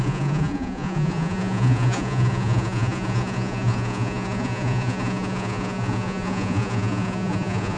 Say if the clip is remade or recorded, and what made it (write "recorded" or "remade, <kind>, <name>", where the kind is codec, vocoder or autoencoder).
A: remade, vocoder, Vocos